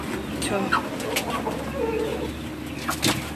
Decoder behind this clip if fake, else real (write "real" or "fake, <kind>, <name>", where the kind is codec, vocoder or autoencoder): real